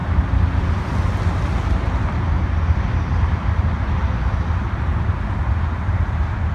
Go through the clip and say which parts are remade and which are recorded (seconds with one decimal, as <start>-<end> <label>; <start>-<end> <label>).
0.0-6.5 recorded